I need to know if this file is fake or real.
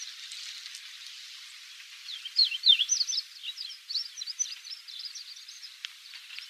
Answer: real